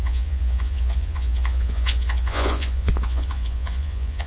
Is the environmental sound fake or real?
fake